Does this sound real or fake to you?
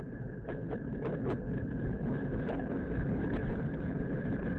fake